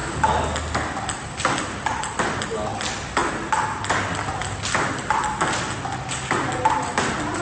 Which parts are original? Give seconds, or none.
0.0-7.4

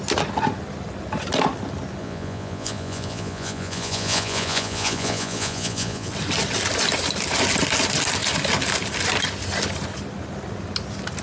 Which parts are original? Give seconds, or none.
0.0-2.0; 6.1-11.2